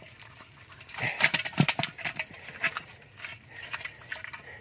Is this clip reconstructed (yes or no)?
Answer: no